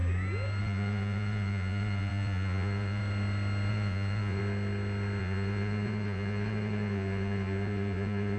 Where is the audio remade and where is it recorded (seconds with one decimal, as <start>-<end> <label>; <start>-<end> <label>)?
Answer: 0.0-0.6 recorded; 0.6-3.0 remade; 3.0-3.7 recorded; 3.7-4.4 remade; 4.4-5.2 recorded; 5.2-8.4 remade